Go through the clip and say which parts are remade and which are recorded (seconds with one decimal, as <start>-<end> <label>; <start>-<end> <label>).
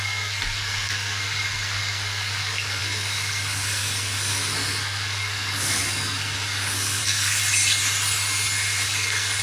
0.0-7.4 remade; 7.4-8.8 recorded; 8.8-9.4 remade